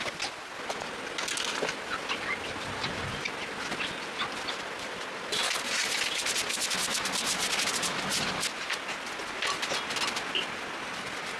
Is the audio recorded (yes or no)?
yes